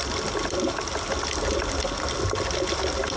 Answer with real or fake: real